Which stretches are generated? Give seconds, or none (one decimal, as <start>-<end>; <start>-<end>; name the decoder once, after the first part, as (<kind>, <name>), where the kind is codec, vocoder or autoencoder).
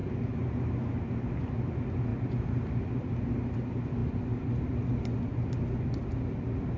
none